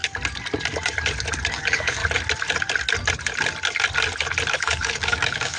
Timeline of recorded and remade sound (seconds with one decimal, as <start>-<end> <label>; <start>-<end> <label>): 0.0-1.5 recorded; 1.5-2.0 remade; 2.0-4.5 recorded; 4.5-5.6 remade